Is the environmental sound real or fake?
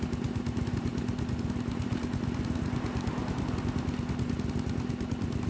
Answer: real